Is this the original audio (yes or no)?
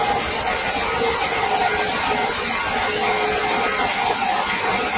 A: yes